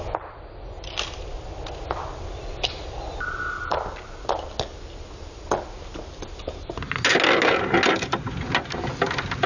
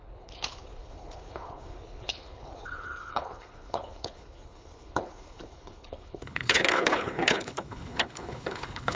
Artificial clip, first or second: second